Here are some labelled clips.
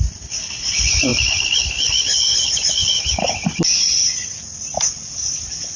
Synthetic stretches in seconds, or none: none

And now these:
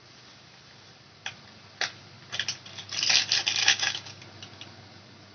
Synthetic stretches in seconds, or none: 3.6-4.2 (codec, DAC)